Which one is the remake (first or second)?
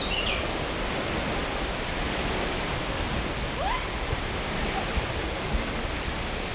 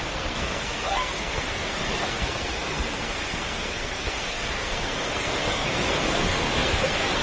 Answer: second